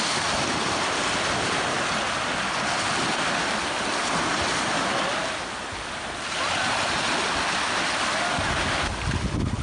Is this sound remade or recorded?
recorded